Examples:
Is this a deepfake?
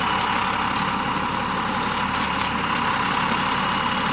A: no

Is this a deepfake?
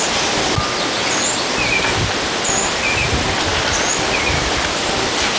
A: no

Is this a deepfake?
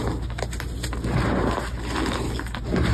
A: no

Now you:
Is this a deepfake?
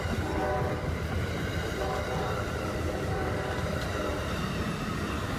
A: yes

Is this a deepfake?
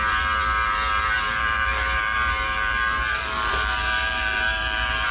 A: yes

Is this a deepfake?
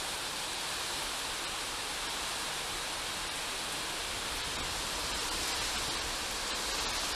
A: no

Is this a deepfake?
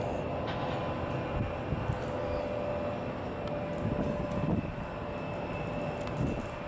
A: no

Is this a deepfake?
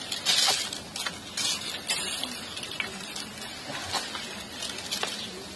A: no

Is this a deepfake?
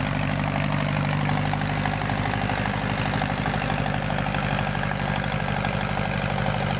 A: no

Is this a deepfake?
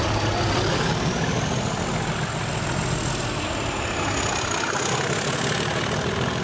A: no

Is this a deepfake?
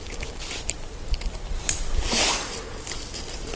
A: no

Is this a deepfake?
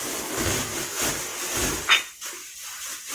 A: no